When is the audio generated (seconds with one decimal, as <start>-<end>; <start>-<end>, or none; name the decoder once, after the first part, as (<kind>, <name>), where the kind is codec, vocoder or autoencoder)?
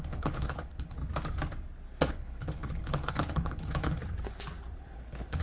0.0-1.0 (codec, HILCodec); 2.1-4.0; 4.8-5.4